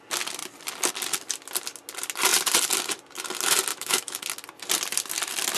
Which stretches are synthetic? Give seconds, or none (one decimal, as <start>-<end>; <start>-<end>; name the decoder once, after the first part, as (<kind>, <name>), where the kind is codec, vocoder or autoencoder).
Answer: 3.7-4.2 (autoencoder, DAC-VAE)